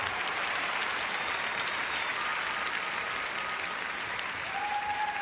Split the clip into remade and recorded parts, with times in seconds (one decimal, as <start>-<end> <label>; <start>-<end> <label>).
0.0-2.3 remade; 2.3-3.9 recorded; 3.9-5.2 remade